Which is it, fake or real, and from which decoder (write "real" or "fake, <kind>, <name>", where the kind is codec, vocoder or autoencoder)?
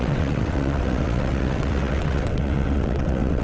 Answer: fake, vocoder, WaveNeXt